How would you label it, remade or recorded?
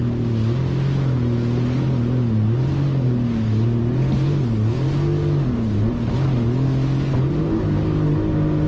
recorded